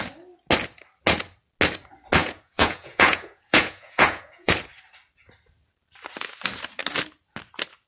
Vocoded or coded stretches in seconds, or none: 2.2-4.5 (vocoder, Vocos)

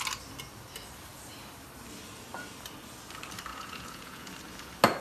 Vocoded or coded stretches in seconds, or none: 3.5-4.3 (vocoder, Vocos)

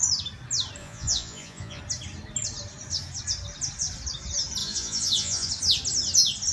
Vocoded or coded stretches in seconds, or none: 0.8-1.8 (vocoder, Vocos); 4.6-5.5

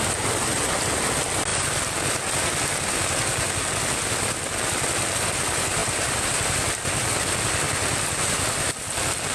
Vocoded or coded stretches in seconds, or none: none

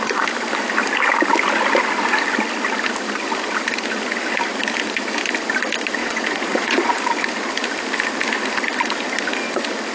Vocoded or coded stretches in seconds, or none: 6.0-7.0 (vocoder, Vocos)